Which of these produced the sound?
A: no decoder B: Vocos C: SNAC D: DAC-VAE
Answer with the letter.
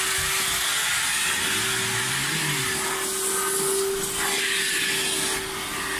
A